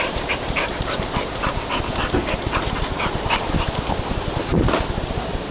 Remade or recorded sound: remade